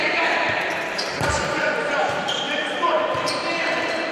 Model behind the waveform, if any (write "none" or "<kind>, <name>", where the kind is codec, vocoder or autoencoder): vocoder, BigVGAN v2